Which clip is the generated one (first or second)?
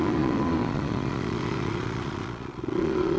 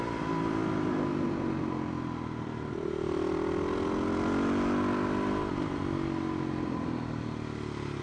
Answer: first